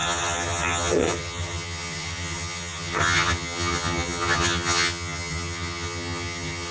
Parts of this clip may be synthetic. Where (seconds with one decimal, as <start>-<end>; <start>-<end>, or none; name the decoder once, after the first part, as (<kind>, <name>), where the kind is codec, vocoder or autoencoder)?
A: 0.0-6.7 (vocoder, HiFi-GAN)